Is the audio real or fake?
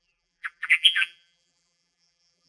fake